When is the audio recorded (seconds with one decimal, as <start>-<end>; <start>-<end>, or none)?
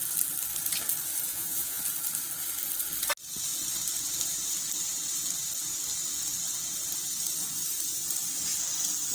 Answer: 0.0-1.3; 1.8-9.1